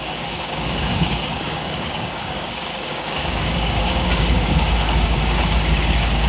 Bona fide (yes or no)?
no